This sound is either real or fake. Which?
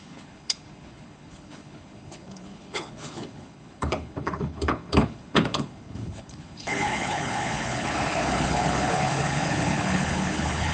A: fake